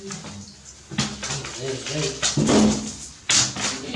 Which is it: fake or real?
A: real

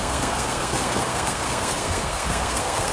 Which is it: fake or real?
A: fake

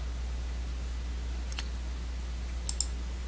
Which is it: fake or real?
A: real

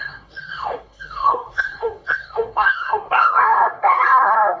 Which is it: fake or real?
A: fake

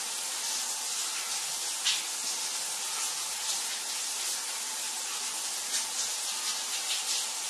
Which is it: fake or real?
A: real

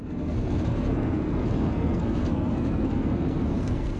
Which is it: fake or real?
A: fake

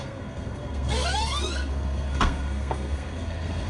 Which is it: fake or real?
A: fake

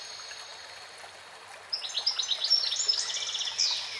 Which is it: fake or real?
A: real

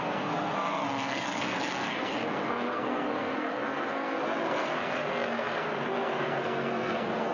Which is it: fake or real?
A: fake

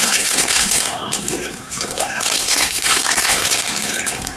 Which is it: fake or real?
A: fake